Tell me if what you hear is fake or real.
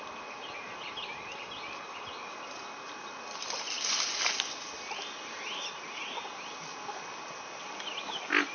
real